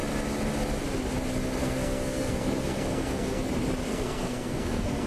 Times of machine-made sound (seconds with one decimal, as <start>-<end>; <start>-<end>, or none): 1.6-3.5; 3.9-5.1